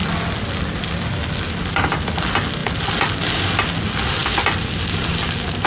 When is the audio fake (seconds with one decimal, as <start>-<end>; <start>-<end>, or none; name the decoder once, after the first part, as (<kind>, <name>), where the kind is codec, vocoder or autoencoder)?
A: none